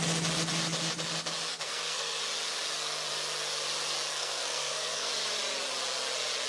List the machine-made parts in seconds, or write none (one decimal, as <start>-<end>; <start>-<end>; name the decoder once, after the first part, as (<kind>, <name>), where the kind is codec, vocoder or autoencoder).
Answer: 1.5-2.2 (codec, SNAC); 4.1-5.1